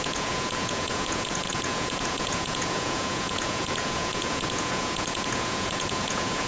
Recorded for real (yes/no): no